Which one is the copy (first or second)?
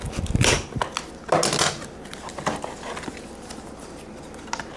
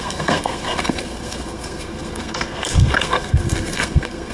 second